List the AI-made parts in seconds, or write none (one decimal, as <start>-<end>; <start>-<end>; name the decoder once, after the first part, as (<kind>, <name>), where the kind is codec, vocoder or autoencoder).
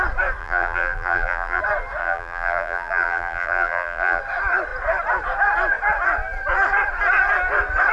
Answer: 0.4-1.6 (vocoder, BigVGAN v2); 2.0-4.2